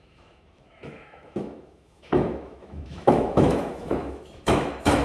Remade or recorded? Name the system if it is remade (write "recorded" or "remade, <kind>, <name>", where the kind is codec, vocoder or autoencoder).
remade, autoencoder, DAC-VAE